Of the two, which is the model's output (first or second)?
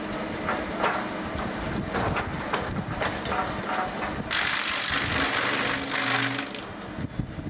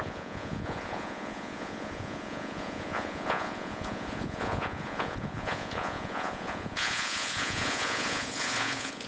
second